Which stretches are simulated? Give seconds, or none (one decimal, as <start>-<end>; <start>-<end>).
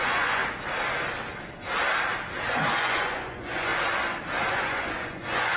0.0-0.4; 2.8-3.7; 4.5-5.6